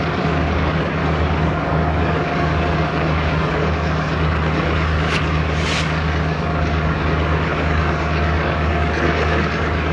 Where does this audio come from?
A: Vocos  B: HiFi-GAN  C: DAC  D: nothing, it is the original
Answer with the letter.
C